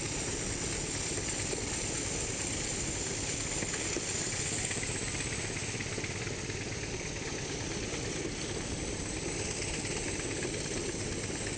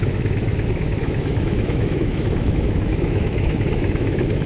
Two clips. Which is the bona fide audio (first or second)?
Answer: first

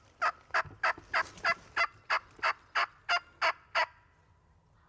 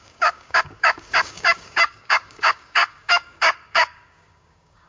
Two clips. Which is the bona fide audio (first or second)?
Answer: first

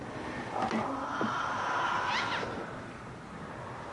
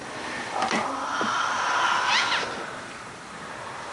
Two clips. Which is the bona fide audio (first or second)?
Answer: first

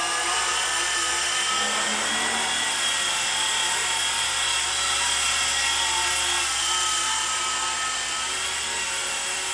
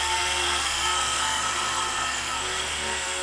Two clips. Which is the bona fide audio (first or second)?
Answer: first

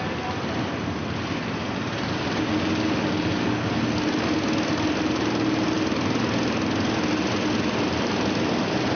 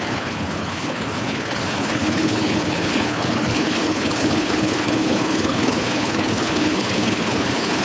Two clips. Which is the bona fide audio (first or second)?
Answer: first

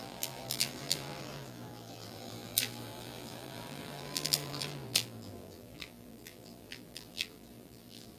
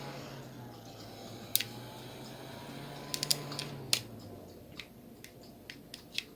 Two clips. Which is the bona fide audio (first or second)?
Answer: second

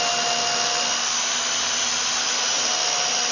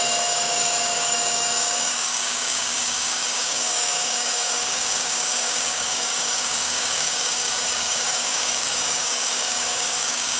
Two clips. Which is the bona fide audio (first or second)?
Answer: first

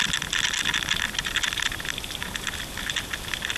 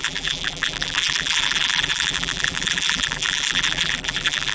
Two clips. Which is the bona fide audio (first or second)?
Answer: first